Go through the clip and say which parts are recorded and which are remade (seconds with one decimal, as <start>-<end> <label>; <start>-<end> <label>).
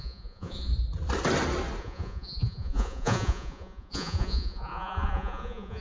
0.0-0.7 remade; 0.7-1.8 recorded; 1.8-5.8 remade